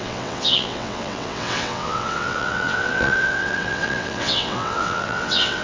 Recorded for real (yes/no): no